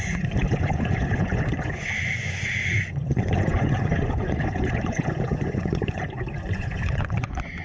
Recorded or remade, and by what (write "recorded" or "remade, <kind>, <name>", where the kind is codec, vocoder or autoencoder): remade, vocoder, Vocos